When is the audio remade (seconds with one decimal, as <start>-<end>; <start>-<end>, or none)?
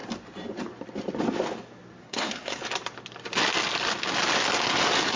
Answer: 2.0-2.6